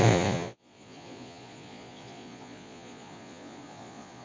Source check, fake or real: fake